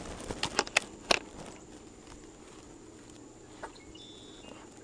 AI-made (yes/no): no